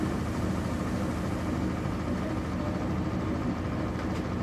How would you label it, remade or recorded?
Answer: recorded